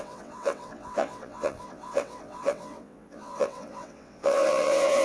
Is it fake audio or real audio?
fake